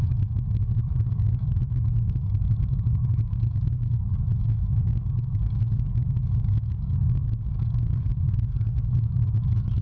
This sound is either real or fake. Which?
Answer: fake